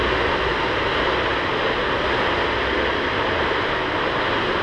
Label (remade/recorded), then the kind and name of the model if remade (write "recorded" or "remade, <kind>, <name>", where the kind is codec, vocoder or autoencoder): recorded